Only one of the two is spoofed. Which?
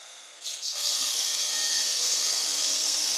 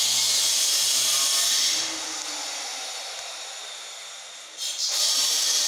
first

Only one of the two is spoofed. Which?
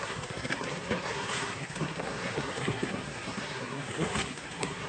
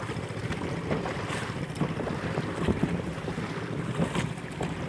first